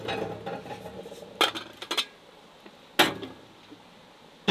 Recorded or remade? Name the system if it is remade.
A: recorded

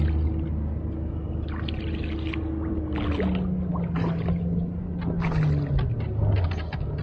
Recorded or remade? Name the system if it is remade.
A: recorded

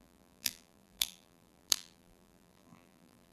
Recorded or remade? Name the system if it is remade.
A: remade, vocoder, BigVGAN v2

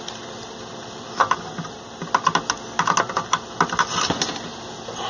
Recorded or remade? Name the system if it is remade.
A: recorded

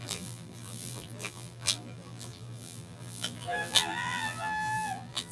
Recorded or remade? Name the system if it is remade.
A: remade, vocoder, BigVGAN v2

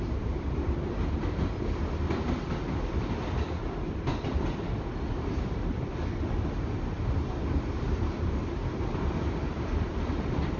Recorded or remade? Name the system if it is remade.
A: remade, vocoder, BigVGAN v2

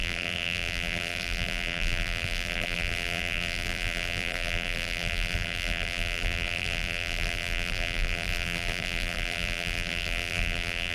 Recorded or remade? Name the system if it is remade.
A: remade, vocoder, BigVGAN v2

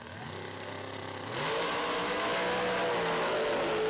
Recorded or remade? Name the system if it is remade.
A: recorded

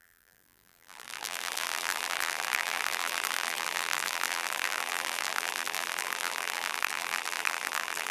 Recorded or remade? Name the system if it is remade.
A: remade, vocoder, BigVGAN v2